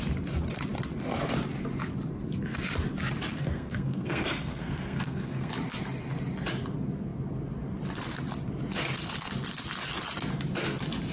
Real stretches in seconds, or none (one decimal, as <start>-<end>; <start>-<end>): 0.0-3.3; 5.5-11.1